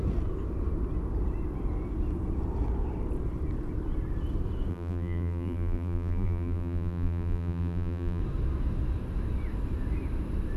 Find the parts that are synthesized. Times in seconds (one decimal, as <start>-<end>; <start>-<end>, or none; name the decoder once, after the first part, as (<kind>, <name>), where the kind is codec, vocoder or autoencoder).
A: 4.7-8.2 (vocoder, BigVGAN v2)